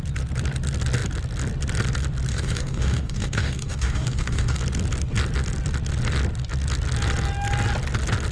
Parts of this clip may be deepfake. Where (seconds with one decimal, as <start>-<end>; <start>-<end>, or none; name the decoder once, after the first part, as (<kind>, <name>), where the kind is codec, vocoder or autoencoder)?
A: 2.3-4.6 (codec, DAC)